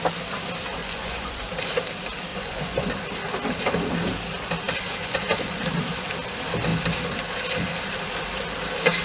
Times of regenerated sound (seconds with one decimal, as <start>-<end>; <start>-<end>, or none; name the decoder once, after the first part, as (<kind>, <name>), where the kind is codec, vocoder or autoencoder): 0.8-1.5 (vocoder, Vocos); 2.3-2.9; 5.0-5.6